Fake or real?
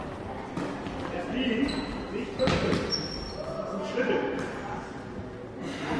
real